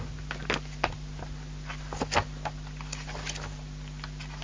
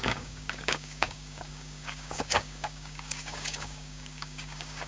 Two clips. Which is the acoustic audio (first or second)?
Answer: first